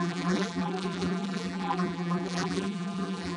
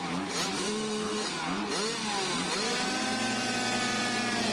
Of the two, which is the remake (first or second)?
first